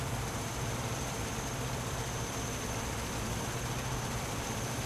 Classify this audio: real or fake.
fake